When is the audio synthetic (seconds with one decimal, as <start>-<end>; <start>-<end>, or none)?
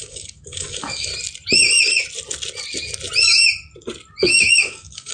0.0-1.1; 4.2-5.1